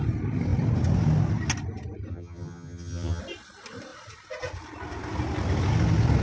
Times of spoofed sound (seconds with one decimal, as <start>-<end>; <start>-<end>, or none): 2.1-3.2